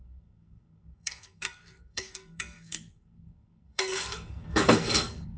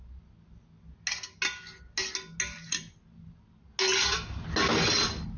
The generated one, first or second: first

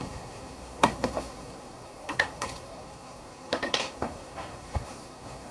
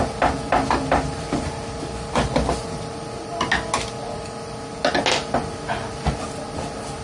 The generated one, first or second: first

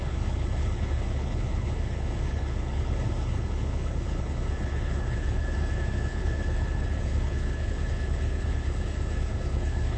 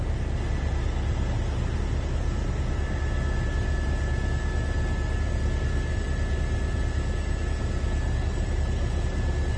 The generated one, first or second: first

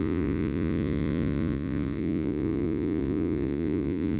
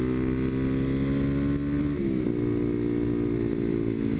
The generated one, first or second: first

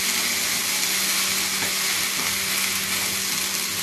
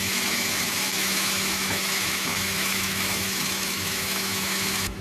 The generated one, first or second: second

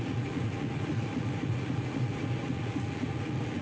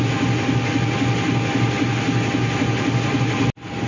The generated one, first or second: first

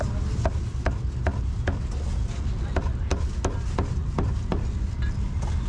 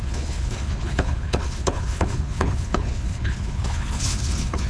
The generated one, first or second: second